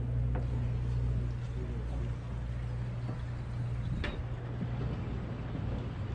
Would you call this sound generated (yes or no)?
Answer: no